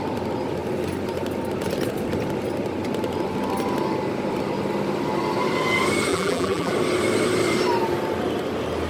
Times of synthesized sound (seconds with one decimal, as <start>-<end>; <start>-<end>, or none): 6.1-6.7